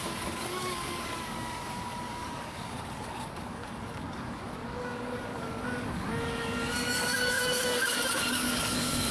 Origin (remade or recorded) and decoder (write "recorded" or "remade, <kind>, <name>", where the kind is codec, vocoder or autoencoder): remade, codec, DAC